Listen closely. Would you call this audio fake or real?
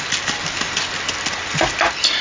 real